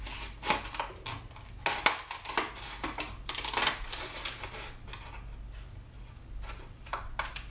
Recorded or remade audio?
recorded